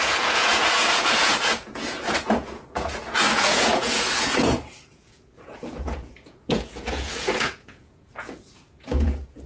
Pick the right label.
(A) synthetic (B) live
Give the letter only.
A